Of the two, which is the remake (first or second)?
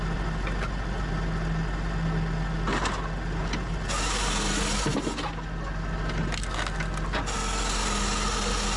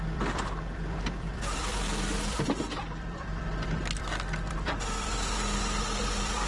second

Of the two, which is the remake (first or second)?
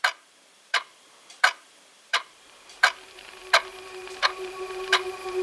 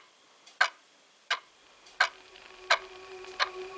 first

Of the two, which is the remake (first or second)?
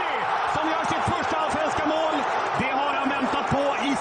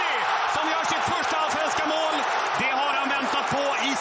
first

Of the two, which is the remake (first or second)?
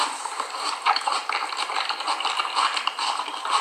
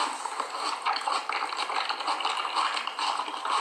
first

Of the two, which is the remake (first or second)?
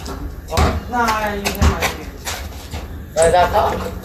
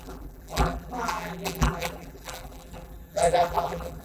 second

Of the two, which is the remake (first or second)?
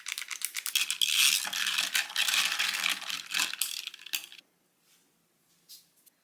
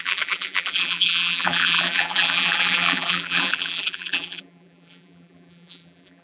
second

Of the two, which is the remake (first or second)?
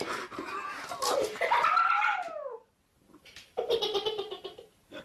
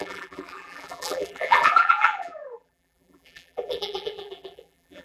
second